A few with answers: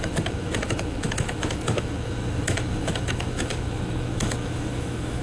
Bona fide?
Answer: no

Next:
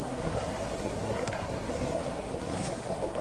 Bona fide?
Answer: no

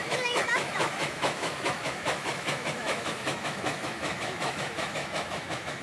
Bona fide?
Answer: no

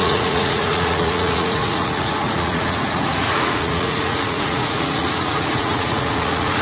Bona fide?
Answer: no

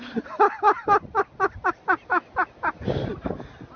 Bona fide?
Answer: yes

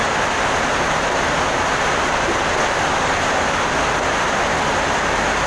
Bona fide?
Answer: yes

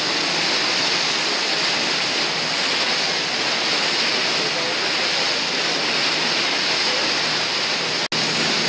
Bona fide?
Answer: yes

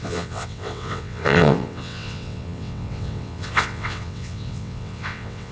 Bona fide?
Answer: no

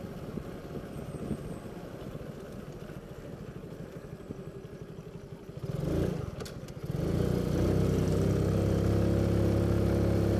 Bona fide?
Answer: yes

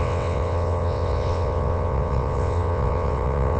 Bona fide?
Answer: no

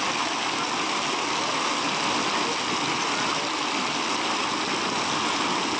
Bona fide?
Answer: yes